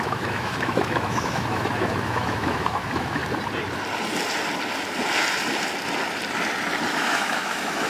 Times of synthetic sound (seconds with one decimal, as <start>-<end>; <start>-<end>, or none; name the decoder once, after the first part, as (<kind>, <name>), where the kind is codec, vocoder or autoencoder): 0.0-3.2 (autoencoder, DAC-VAE); 6.9-7.9